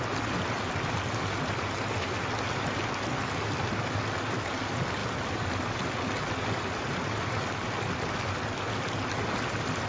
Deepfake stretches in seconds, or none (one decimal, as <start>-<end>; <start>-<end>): none